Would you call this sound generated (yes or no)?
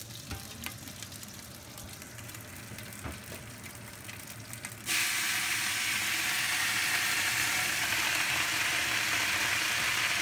no